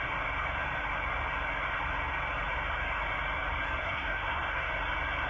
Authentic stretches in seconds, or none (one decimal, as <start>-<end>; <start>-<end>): 0.0-3.8; 4.7-5.3